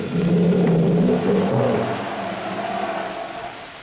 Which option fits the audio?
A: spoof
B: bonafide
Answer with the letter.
B